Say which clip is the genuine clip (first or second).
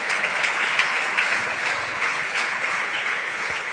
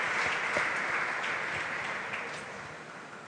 second